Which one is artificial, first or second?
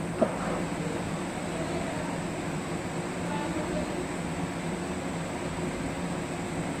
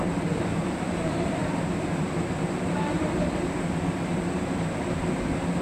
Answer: second